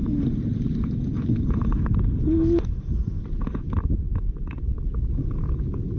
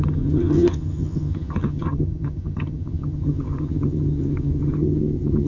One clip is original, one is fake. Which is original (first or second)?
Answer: first